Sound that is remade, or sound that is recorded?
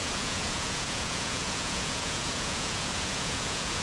remade